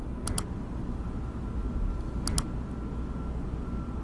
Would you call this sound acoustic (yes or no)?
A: yes